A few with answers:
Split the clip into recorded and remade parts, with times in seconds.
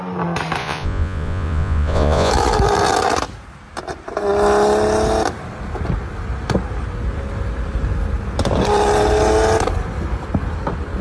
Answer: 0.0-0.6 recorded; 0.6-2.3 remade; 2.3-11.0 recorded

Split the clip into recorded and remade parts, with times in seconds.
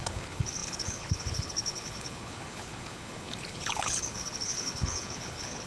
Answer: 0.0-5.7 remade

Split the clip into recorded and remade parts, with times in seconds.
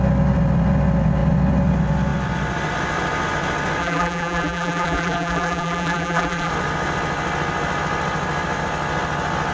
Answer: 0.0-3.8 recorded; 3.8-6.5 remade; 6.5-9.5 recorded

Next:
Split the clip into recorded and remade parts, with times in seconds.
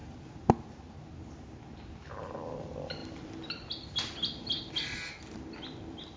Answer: 0.0-6.2 recorded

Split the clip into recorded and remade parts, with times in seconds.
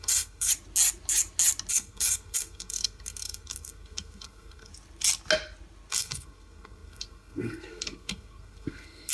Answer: 0.0-0.5 remade; 0.5-1.7 recorded; 1.7-4.7 remade; 4.7-5.9 recorded; 5.9-9.1 remade